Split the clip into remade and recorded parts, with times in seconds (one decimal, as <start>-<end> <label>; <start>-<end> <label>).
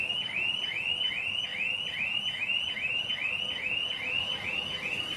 0.0-5.2 recorded